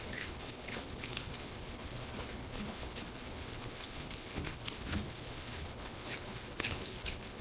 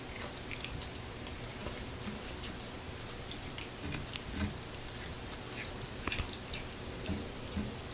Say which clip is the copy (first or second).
first